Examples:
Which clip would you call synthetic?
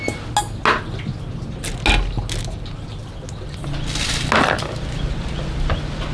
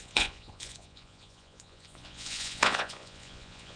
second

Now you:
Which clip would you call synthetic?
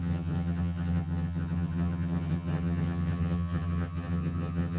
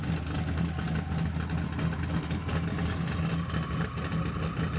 first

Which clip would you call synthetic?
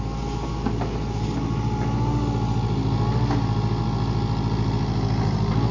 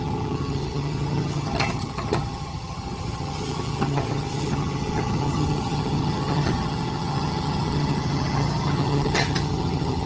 second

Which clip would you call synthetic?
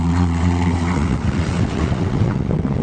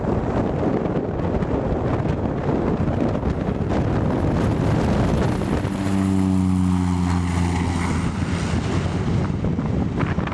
first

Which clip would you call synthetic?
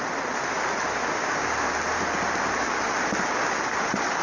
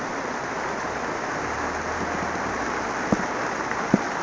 second